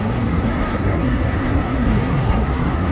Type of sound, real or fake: fake